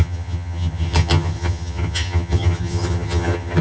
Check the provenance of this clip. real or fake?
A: fake